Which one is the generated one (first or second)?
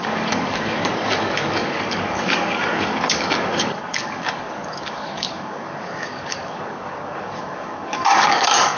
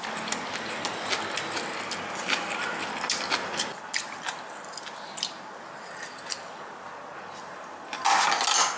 first